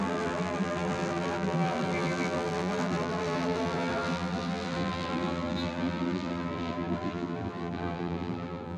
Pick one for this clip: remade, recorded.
remade